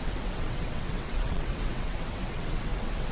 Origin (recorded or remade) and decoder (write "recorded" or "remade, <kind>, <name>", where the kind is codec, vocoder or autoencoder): remade, vocoder, WaveNeXt